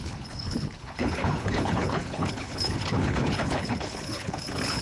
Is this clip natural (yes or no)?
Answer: no